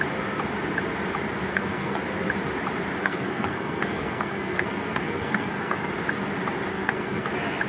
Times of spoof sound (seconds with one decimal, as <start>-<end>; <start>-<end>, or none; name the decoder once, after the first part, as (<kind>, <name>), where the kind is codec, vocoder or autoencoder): 1.5-2.0 (codec, SNAC); 3.0-5.9; 6.7-7.3